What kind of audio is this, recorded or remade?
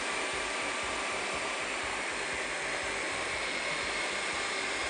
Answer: remade